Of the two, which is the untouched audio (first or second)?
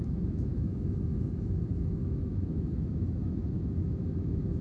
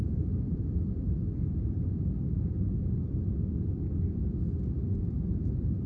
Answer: second